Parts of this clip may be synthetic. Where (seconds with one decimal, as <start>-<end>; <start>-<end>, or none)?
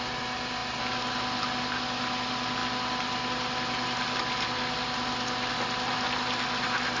none